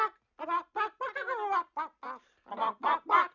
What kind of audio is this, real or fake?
real